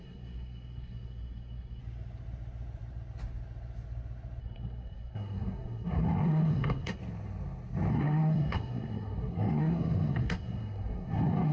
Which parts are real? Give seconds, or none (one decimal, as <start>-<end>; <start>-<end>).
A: 1.8-4.4; 7.0-7.9